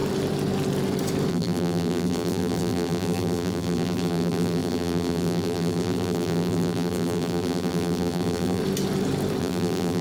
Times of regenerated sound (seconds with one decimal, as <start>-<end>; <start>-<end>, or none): 1.3-8.6; 9.4-10.0